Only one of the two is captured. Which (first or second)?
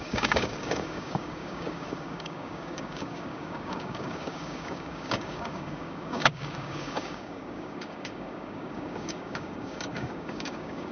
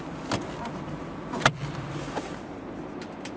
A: second